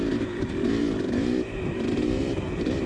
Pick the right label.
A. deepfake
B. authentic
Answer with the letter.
A